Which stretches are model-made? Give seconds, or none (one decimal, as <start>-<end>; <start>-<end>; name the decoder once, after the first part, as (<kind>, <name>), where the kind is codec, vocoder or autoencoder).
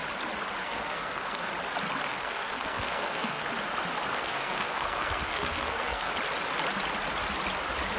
0.6-1.5 (codec, SNAC); 2.1-3.5; 4.1-6.1